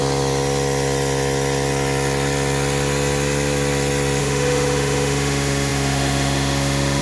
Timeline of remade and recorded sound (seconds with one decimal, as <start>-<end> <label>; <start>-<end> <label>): 0.0-4.2 recorded; 4.2-7.0 remade